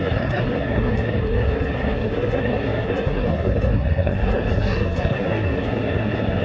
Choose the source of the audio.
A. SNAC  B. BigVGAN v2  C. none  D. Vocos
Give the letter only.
A